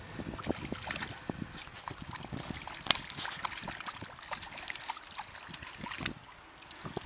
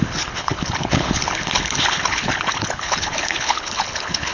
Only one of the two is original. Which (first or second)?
first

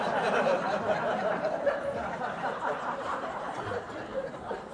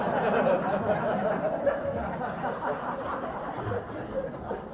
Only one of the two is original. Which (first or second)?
second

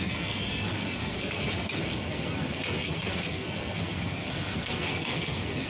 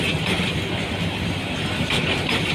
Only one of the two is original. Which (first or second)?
second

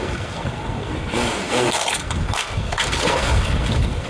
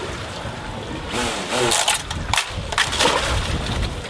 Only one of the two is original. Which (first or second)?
second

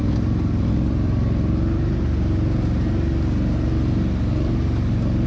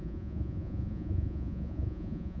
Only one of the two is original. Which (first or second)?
first